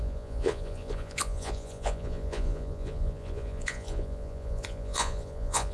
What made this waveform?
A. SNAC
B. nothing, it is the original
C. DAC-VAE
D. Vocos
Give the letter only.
D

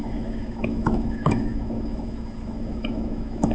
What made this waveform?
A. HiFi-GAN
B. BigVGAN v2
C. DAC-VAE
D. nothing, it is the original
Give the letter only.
C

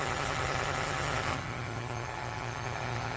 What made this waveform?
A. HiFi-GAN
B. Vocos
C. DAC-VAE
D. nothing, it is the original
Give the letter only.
A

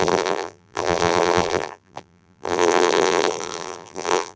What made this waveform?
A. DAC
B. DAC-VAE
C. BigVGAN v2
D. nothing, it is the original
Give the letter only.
C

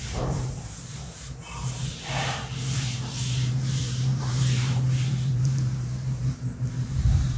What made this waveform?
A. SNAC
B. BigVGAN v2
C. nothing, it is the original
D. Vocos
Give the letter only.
B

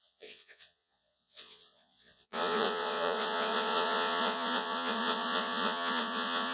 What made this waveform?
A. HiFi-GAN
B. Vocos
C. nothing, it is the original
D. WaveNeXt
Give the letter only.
B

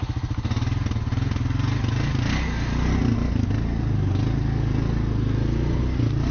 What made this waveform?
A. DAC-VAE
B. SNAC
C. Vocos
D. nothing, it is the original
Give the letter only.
D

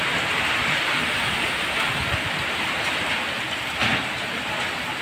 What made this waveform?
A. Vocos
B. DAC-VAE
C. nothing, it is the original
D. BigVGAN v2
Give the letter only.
C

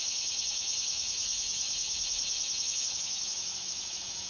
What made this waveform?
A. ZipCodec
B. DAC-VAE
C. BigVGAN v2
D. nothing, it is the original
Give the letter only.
B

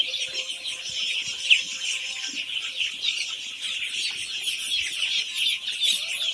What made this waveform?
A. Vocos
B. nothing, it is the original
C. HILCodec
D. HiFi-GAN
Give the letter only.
B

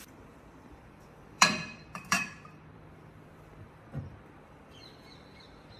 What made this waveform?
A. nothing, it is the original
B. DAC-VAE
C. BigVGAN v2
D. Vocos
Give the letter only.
C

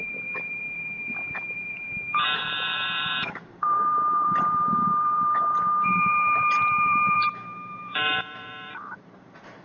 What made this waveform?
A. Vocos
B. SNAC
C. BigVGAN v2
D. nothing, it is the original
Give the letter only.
C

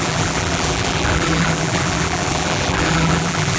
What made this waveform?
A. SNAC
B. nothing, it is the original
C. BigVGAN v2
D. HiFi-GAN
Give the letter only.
C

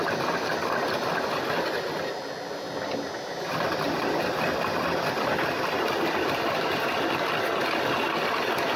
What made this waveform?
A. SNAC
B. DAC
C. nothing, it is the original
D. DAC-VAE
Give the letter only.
C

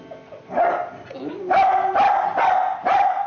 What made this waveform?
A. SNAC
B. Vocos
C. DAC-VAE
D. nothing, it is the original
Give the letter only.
D